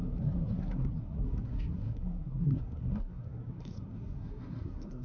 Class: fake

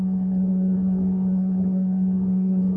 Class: fake